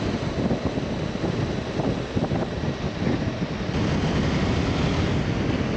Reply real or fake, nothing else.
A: real